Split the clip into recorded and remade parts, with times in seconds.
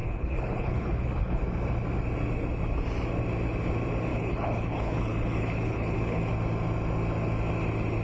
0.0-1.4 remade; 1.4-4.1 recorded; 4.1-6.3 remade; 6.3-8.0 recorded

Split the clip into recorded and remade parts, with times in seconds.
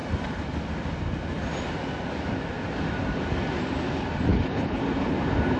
0.0-4.3 recorded; 4.3-4.8 remade; 4.8-5.6 recorded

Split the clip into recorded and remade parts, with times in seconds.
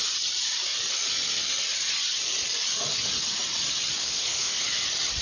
0.0-4.0 recorded; 4.0-4.6 remade; 4.6-5.2 recorded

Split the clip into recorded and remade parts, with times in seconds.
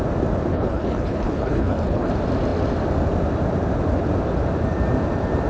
0.0-0.5 recorded; 0.5-2.1 remade; 2.1-5.5 recorded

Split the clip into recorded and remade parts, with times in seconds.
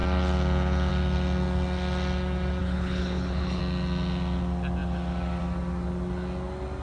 0.0-2.6 recorded; 2.6-3.6 remade; 3.6-6.8 recorded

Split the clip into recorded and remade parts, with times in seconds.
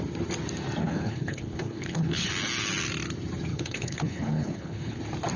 0.0-0.8 recorded; 0.8-2.3 remade; 2.3-3.5 recorded; 3.5-5.0 remade; 5.0-5.4 recorded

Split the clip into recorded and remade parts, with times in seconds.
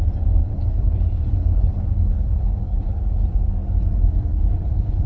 0.0-0.4 recorded; 0.4-3.5 remade; 3.5-4.3 recorded; 4.3-5.1 remade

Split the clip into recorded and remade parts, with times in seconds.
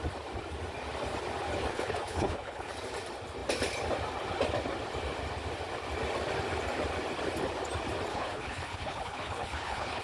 0.0-1.7 recorded; 1.7-2.7 remade; 2.7-8.1 recorded; 8.1-10.0 remade